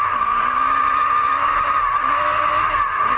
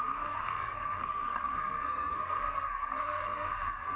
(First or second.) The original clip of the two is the first